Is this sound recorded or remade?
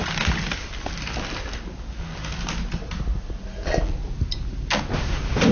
recorded